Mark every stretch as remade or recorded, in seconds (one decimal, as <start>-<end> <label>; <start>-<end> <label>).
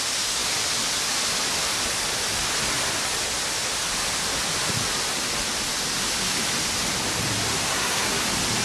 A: 0.0-7.7 recorded; 7.7-8.2 remade; 8.2-8.6 recorded